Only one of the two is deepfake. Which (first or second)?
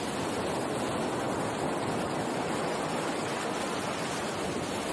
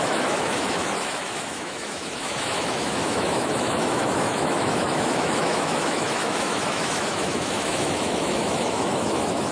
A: second